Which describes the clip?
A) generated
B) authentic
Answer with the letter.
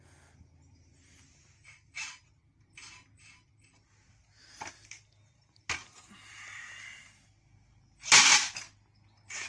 B